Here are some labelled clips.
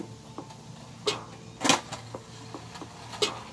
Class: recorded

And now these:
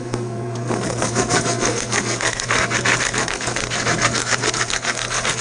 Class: remade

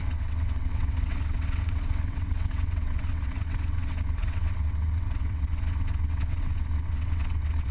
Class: remade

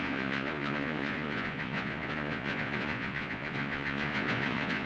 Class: remade